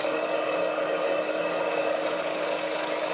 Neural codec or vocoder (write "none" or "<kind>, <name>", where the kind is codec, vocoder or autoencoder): codec, DAC